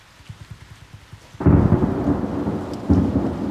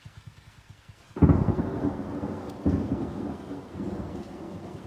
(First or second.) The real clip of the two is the first